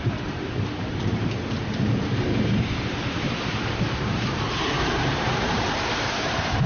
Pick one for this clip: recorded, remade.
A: remade